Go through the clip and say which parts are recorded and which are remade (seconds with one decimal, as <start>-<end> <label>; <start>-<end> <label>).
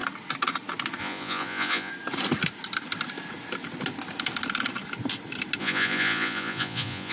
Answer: 0.0-1.0 recorded; 1.0-1.9 remade; 1.9-5.6 recorded; 5.6-7.1 remade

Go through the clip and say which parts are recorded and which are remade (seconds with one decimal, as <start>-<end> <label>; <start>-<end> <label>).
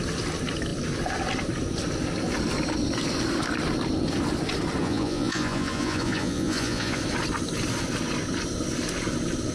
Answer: 0.0-4.8 recorded; 4.8-7.0 remade; 7.0-9.5 recorded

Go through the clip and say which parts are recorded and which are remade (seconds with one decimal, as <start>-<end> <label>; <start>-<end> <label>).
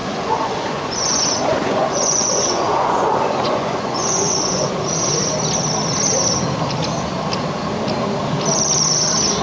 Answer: 0.0-4.7 remade; 4.7-9.4 recorded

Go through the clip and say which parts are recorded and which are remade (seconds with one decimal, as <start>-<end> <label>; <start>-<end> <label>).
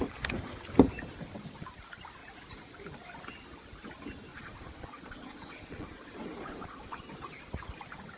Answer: 0.0-4.3 recorded; 4.3-7.3 remade; 7.3-8.2 recorded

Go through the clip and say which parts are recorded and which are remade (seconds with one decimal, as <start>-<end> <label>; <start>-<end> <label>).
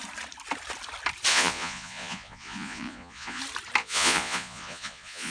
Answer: 0.0-1.3 recorded; 1.3-3.4 remade; 3.4-3.8 recorded; 3.8-5.3 remade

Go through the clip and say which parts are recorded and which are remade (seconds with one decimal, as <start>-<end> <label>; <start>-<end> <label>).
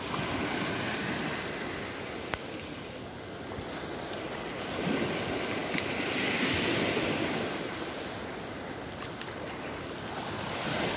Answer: 0.0-11.0 recorded